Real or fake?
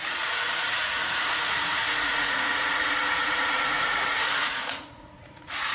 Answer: fake